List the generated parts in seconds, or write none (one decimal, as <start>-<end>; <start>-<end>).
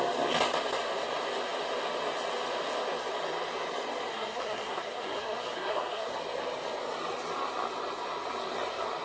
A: 4.1-6.1